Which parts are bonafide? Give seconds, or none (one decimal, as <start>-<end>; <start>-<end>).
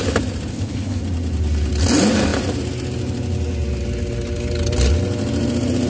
0.0-0.5; 1.0-5.9